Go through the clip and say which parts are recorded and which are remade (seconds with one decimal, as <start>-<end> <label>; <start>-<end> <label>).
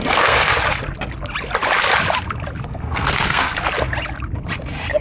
0.0-0.5 remade; 0.5-2.6 recorded; 2.6-3.5 remade; 3.5-5.0 recorded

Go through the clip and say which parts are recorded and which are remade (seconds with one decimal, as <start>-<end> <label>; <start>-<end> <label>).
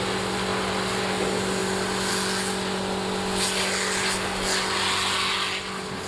0.0-6.1 recorded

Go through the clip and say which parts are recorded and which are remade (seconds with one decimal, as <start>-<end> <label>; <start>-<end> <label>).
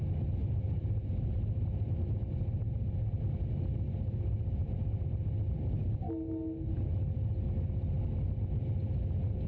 0.0-9.5 recorded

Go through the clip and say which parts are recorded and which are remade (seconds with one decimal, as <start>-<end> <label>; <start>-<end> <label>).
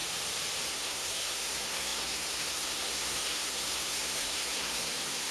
0.0-0.7 recorded; 0.7-5.3 remade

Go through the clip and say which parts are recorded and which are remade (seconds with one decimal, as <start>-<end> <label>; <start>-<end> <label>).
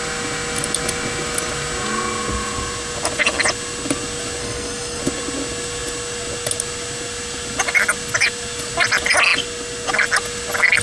0.0-4.4 recorded; 4.4-5.0 remade; 5.0-10.8 recorded